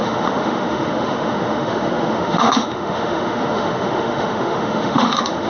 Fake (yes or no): yes